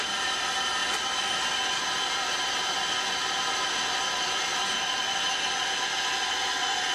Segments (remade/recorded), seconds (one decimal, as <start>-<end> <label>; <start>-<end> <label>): 0.0-4.5 remade; 4.5-6.3 recorded; 6.3-6.9 remade